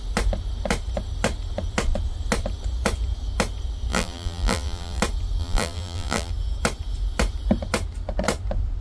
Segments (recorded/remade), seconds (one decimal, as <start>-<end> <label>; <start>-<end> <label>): 0.0-3.9 recorded; 3.9-5.0 remade; 5.0-5.4 recorded; 5.4-6.3 remade; 6.3-8.8 recorded